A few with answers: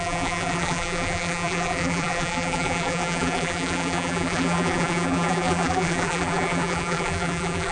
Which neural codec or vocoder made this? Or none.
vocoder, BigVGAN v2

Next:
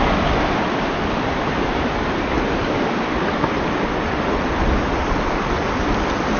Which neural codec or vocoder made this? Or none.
none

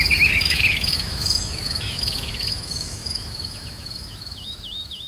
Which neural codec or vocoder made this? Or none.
autoencoder, DAC-VAE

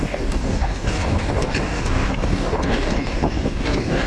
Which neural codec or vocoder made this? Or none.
codec, DAC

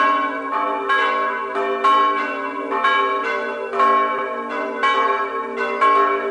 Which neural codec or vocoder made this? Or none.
none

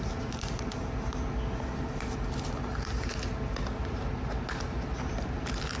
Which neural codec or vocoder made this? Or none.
none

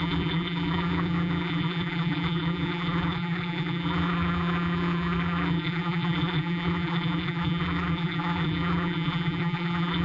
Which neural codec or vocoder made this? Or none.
vocoder, BigVGAN v2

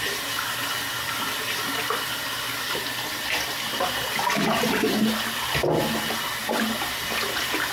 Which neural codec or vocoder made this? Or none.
none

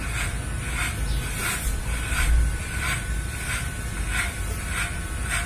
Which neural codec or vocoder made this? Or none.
vocoder, BigVGAN v2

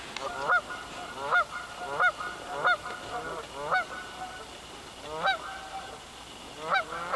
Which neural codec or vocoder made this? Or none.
none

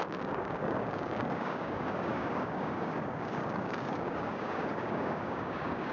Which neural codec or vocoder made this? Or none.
codec, DAC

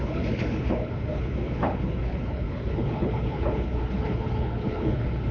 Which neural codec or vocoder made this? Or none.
codec, HILCodec